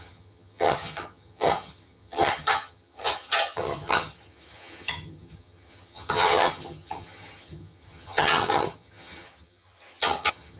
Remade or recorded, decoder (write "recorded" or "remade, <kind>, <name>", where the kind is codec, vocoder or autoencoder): remade, vocoder, HiFi-GAN